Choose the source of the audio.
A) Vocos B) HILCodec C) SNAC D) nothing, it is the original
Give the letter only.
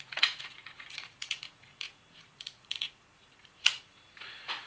A